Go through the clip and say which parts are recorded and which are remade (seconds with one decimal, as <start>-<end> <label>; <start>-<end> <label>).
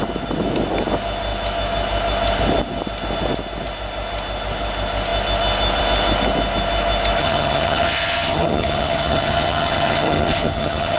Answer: 0.0-7.2 recorded; 7.2-11.0 remade